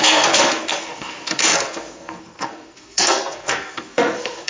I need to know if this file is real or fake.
fake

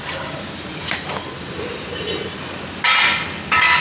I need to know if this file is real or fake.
real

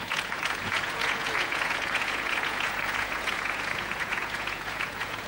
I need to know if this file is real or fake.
fake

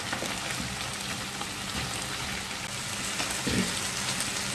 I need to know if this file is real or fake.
real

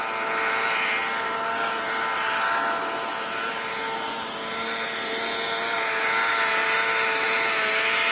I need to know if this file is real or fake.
real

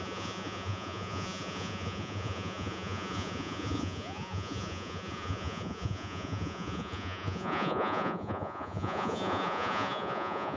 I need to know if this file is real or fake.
fake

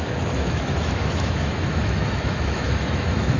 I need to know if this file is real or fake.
fake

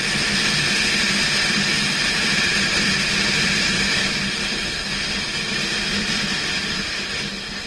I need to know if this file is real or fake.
real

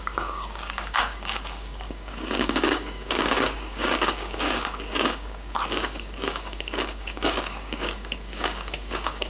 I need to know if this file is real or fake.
fake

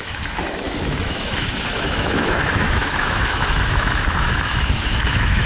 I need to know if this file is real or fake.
fake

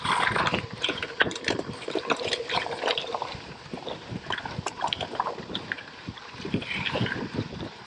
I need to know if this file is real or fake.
fake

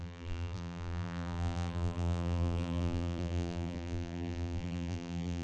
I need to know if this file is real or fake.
fake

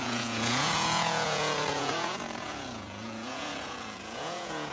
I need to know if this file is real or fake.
fake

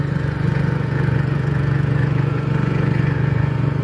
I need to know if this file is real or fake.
fake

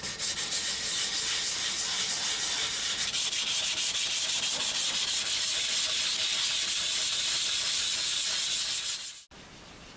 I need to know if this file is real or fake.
real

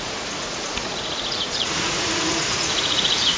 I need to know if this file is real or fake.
fake